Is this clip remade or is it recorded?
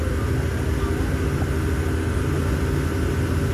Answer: recorded